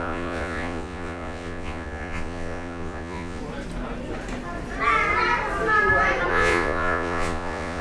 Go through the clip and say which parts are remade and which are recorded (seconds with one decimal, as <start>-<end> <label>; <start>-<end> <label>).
0.0-3.4 remade; 3.4-6.3 recorded; 6.3-7.8 remade